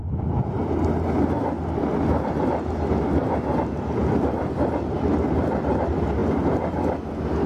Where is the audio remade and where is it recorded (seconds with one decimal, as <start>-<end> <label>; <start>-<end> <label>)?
0.0-7.5 recorded

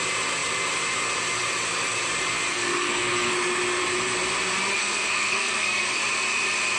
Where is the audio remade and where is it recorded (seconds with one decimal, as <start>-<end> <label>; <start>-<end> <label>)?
0.0-2.5 recorded; 2.5-3.3 remade; 3.3-4.8 recorded; 4.8-6.0 remade; 6.0-6.8 recorded

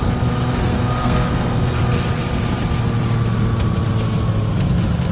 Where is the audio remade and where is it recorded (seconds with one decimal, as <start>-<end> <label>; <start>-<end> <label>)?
0.0-0.6 recorded; 0.6-1.8 remade; 1.8-5.1 recorded

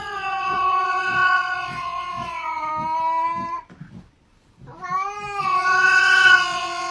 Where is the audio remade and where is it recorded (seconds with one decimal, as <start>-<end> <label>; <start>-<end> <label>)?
0.0-2.7 remade; 2.7-5.4 recorded; 5.4-6.9 remade